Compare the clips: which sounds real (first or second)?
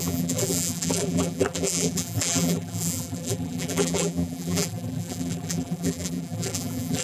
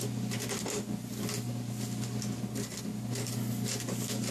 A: second